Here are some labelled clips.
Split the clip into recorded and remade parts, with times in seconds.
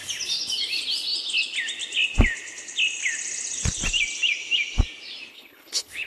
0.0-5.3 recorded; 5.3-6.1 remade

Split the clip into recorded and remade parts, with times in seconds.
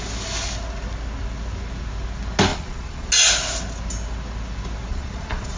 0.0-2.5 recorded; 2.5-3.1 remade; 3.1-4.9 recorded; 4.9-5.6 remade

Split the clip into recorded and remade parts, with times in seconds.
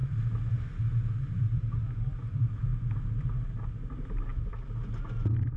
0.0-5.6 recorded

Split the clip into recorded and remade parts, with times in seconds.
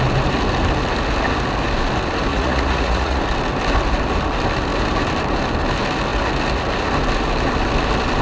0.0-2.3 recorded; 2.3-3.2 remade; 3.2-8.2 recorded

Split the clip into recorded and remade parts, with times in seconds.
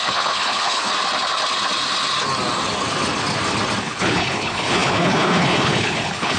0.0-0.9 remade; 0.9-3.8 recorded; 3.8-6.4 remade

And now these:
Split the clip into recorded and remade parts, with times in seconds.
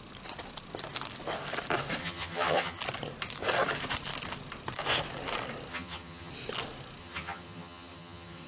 0.0-2.0 recorded; 2.0-2.8 remade; 2.8-5.7 recorded; 5.7-6.3 remade; 6.3-7.0 recorded; 7.0-8.5 remade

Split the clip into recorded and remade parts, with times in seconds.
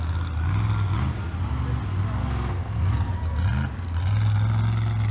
0.0-2.2 recorded; 2.2-2.9 remade; 2.9-5.1 recorded